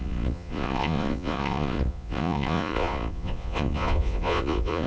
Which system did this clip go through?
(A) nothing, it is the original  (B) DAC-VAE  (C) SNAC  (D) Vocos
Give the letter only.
D